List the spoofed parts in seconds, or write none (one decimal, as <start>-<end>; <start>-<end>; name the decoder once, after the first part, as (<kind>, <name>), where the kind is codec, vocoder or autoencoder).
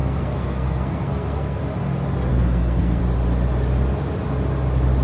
0.0-1.6 (codec, SNAC); 2.3-3.0